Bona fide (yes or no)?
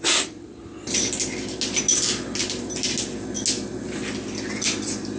yes